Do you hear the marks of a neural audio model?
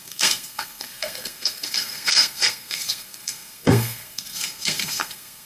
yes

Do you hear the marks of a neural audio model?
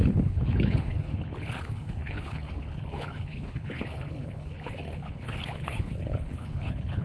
yes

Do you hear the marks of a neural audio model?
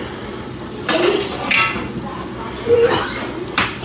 no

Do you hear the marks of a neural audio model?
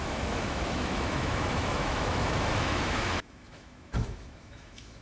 yes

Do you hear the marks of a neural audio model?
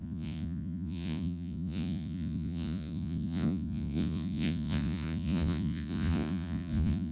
yes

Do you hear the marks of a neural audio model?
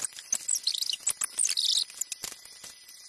no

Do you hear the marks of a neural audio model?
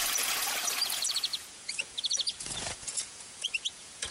yes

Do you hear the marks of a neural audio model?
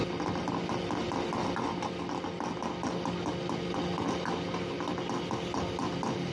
no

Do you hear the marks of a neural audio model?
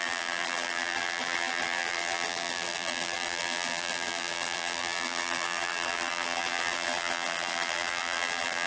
yes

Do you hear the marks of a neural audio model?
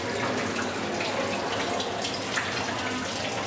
no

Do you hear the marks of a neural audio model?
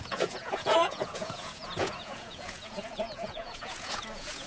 yes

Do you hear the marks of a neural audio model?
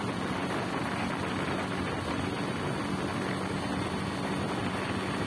no